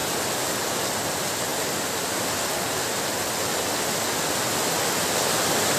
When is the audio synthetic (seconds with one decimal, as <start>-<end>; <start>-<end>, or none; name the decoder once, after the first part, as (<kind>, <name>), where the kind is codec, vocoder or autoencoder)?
none